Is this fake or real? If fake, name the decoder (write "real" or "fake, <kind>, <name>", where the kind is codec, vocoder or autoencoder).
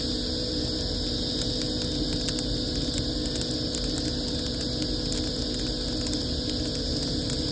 real